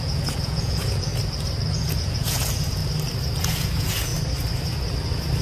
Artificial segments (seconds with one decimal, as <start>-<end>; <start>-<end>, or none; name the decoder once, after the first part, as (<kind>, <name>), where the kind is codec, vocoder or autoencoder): 0.0-1.1 (vocoder, Vocos); 1.7-2.8; 3.4-4.1